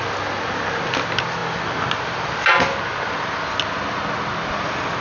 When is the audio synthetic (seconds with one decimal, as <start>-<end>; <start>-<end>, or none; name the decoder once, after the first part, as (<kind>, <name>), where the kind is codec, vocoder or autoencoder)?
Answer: none